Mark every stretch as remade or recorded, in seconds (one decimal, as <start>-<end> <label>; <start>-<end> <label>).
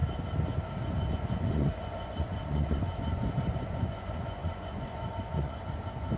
0.0-1.1 recorded; 1.1-6.2 remade